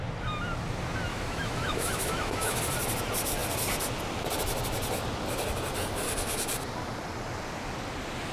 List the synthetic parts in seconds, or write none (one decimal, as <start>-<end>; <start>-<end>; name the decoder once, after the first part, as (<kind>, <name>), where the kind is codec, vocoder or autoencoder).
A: 1.1-2.6 (autoencoder, DAC-VAE)